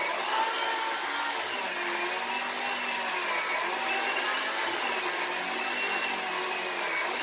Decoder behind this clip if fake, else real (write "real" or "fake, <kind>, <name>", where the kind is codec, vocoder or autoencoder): real